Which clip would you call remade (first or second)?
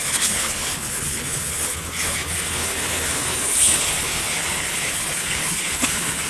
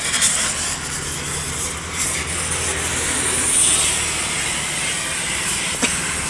first